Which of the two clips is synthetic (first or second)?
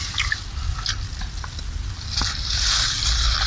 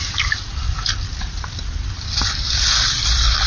second